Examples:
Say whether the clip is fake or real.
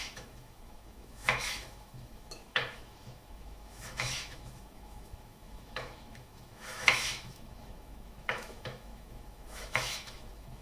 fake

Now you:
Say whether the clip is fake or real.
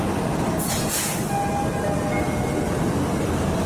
real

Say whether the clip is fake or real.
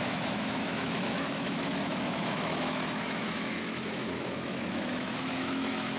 fake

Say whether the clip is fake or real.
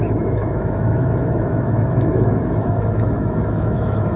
fake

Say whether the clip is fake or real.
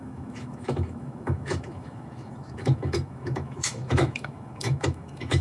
fake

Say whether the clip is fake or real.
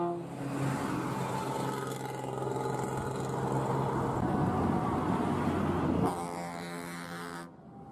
real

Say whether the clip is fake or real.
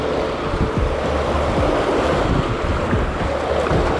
real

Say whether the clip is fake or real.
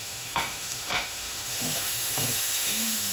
fake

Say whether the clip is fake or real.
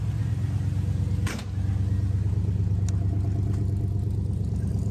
real